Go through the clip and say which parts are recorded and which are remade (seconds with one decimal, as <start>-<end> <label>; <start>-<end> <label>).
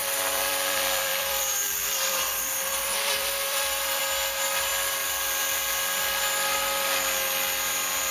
0.0-4.0 remade; 4.0-8.1 recorded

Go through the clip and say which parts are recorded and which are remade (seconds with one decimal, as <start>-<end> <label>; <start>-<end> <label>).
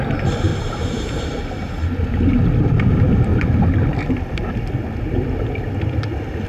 0.0-0.5 recorded; 0.5-1.8 remade; 1.8-6.5 recorded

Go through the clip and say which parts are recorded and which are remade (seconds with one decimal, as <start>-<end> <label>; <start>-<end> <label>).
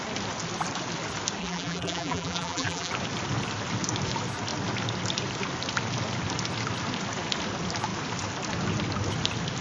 0.0-1.4 recorded; 1.4-2.9 remade; 2.9-9.6 recorded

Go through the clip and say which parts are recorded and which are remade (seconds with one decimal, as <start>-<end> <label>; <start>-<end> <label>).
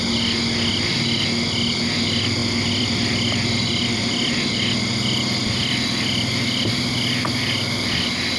0.0-2.4 recorded; 2.4-4.0 remade; 4.0-5.4 recorded; 5.4-6.3 remade; 6.3-8.4 recorded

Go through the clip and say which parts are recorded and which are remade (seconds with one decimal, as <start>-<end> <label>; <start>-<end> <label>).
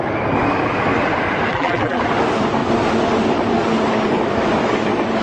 0.0-1.5 recorded; 1.5-2.0 remade; 2.0-5.2 recorded